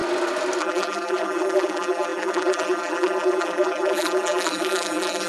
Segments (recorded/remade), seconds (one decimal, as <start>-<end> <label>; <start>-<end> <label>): 0.0-0.6 recorded; 0.6-5.3 remade